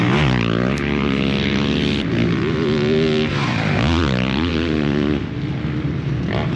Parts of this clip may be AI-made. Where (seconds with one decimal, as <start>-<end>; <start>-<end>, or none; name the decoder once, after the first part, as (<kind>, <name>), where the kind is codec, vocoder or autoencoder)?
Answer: none